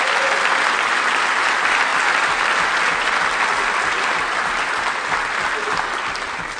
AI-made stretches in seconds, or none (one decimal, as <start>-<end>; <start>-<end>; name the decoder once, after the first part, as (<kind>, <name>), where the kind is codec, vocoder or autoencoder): none